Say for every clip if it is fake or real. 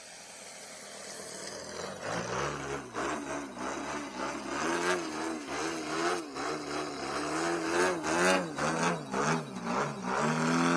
real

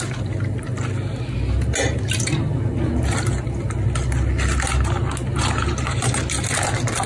real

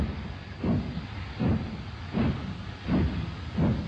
real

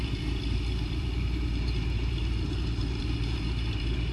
fake